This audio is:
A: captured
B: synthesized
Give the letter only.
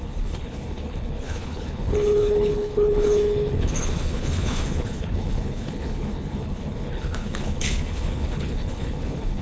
B